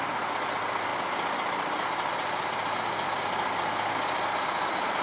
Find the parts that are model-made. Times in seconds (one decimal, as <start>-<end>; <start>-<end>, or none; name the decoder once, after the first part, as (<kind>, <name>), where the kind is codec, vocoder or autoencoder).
none